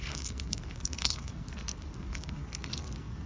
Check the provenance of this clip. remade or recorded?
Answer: remade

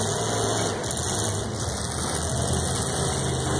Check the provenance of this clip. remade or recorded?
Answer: recorded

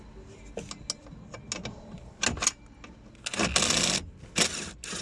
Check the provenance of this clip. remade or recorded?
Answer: recorded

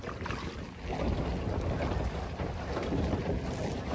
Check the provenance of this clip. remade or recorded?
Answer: recorded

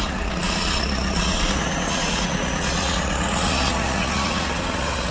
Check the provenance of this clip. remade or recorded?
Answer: remade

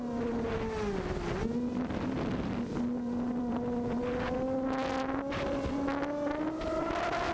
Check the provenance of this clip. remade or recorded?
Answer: recorded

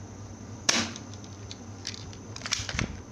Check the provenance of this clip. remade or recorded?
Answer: remade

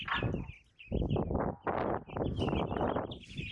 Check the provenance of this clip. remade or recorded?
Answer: recorded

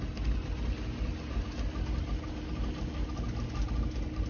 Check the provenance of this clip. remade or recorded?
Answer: recorded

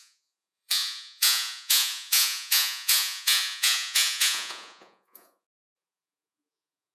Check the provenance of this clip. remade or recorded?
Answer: remade